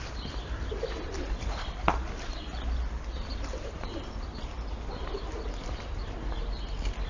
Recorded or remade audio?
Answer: recorded